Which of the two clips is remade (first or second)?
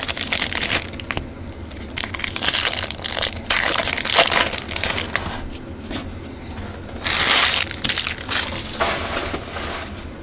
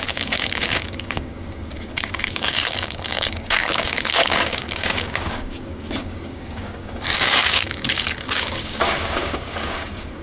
second